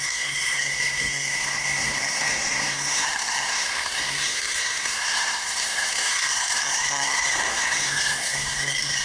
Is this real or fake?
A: fake